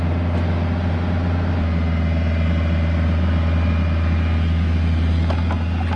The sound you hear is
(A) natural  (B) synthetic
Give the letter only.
A